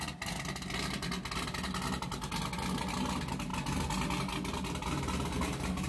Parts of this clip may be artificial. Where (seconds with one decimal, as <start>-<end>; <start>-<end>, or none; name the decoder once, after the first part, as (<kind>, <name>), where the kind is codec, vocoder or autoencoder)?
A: none